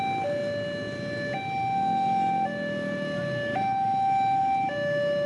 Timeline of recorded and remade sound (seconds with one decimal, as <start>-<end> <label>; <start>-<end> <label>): 0.0-5.3 recorded